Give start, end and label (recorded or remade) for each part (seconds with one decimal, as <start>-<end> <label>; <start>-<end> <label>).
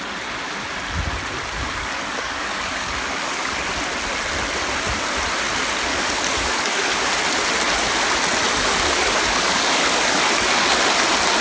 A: 0.0-1.6 recorded; 1.6-3.6 remade; 3.6-5.9 recorded; 5.9-7.1 remade; 7.1-8.5 recorded; 8.5-10.8 remade; 10.8-11.4 recorded